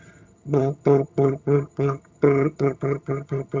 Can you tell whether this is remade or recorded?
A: remade